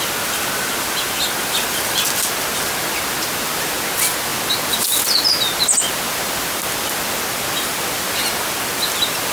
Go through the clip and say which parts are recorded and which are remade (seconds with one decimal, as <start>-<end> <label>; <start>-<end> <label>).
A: 0.0-9.3 recorded